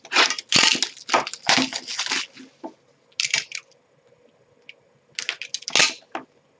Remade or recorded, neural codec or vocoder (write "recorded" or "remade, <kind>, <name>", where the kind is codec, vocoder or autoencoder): recorded